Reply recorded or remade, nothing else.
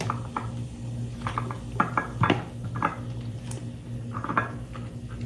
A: recorded